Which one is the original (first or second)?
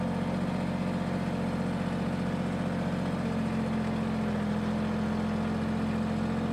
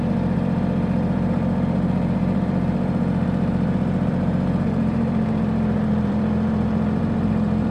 first